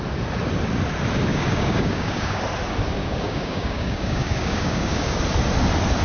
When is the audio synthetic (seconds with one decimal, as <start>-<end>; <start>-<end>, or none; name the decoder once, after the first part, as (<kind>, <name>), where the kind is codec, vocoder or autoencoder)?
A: 1.3-2.4 (codec, DAC); 3.0-5.2

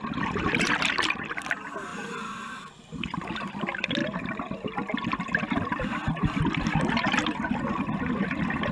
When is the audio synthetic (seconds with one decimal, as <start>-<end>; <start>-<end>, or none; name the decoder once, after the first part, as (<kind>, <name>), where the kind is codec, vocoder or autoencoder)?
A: none

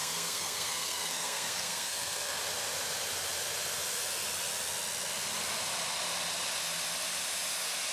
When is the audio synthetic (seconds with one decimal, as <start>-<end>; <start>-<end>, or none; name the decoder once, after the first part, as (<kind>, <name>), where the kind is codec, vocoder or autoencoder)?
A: 0.0-2.4 (codec, SNAC)

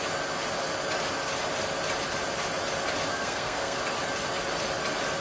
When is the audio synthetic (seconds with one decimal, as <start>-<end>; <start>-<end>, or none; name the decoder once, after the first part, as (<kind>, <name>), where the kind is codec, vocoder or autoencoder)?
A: 3.1-3.8 (codec, SNAC)